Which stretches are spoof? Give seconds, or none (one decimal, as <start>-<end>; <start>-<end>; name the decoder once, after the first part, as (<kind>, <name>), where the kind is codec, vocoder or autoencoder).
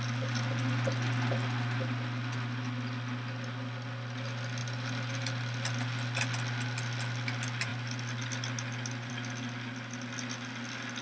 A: none